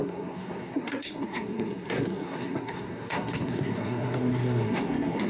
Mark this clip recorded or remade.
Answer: remade